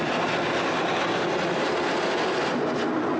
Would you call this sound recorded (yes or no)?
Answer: yes